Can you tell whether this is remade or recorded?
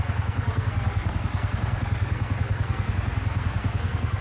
remade